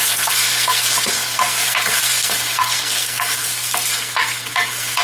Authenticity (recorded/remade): remade